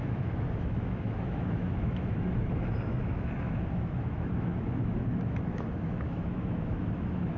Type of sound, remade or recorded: remade